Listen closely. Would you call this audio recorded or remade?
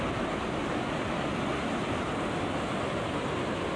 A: recorded